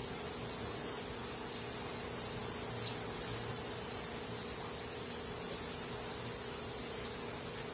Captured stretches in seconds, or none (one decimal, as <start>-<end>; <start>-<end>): 0.0-7.7